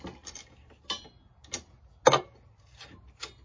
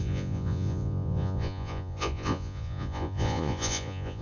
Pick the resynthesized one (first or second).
second